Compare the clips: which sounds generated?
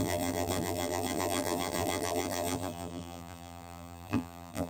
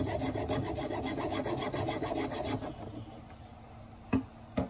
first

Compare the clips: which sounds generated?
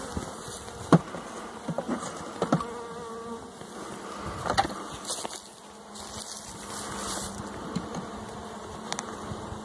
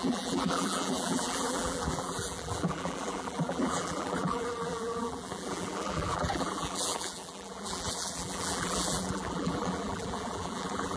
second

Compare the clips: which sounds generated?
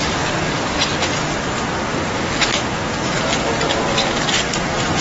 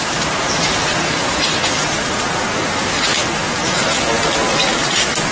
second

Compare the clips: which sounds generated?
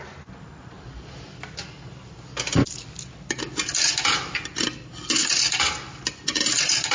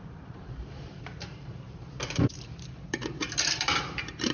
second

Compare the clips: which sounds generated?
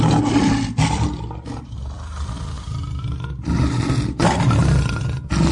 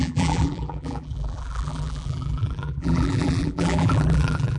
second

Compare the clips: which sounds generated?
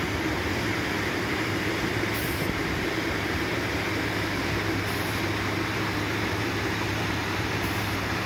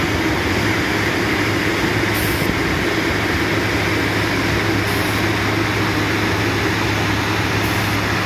first